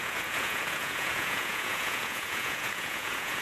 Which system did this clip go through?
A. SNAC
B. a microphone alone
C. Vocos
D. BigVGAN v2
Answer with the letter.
C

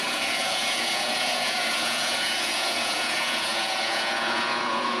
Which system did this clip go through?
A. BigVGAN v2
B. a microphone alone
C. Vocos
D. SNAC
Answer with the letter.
C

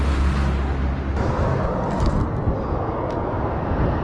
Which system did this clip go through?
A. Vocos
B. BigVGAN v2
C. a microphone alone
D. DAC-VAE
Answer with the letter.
C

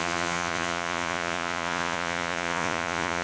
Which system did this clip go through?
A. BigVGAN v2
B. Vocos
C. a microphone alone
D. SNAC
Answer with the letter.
B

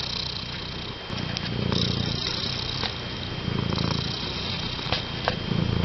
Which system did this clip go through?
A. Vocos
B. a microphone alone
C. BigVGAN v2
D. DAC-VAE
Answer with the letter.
B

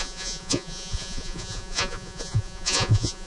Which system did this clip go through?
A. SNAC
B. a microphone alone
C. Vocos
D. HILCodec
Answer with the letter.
C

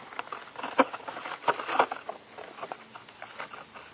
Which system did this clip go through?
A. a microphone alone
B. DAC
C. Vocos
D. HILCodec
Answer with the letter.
A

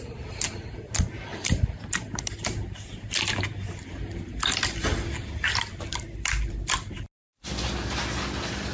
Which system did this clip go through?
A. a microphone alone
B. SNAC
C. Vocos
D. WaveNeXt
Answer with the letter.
A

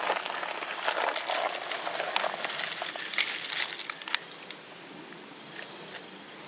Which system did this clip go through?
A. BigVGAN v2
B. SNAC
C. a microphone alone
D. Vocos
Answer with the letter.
C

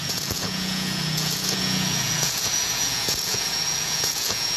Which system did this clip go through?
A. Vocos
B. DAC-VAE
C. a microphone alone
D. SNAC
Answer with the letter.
A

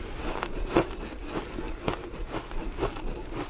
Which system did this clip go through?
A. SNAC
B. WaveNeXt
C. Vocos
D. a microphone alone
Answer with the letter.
D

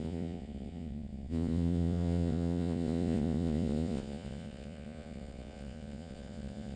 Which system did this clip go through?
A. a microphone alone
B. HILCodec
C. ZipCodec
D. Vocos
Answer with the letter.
D